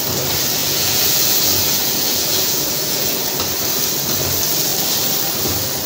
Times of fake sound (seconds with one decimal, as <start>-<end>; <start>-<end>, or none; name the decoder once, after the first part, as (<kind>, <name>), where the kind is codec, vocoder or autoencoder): 0.6-3.3 (vocoder, Vocos)